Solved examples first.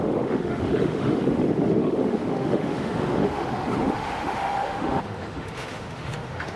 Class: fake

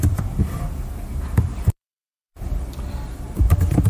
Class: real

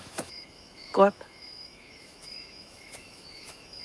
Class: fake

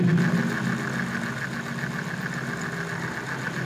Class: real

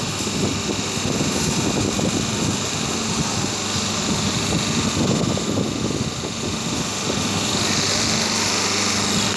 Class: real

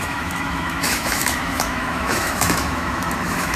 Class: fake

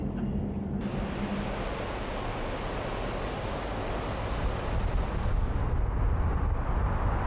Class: real